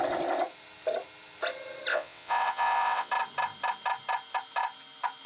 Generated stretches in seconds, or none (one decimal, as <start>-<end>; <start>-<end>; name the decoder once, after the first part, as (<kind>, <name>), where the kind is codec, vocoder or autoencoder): 1.9-3.1 (vocoder, WaveNeXt)